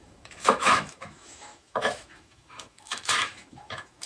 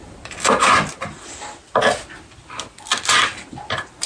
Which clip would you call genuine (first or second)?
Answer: second